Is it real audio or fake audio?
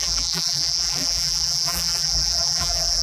fake